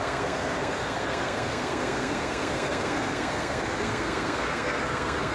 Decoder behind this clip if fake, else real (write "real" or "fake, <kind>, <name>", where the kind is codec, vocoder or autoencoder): fake, codec, SNAC